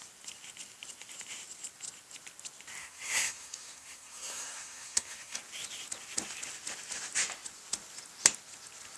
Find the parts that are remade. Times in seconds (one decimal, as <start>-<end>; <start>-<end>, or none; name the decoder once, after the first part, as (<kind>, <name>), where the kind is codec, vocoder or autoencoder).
2.8-5.4 (codec, SNAC)